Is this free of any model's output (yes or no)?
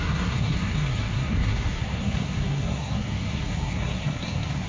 no